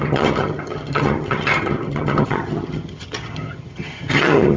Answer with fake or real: fake